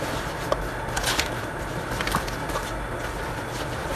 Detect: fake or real real